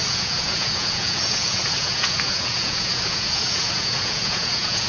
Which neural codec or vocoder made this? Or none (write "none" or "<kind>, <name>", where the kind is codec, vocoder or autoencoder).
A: vocoder, Vocos